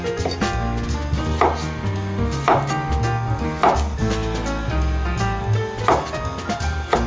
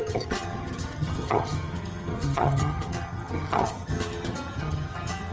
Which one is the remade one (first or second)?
second